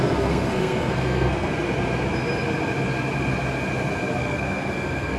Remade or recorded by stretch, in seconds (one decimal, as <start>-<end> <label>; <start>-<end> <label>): 0.0-1.5 remade; 1.5-4.2 recorded; 4.2-5.2 remade